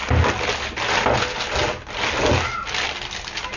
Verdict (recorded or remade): recorded